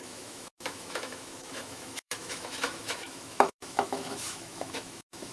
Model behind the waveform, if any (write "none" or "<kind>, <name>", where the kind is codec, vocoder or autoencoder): autoencoder, DAC-VAE